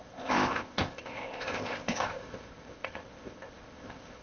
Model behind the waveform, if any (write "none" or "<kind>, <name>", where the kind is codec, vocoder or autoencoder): codec, ZipCodec